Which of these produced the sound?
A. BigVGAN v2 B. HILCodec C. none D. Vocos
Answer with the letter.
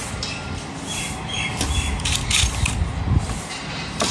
C